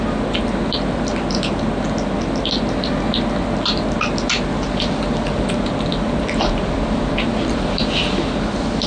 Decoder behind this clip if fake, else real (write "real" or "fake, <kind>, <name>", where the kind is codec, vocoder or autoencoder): real